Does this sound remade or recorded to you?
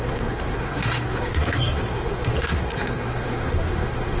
remade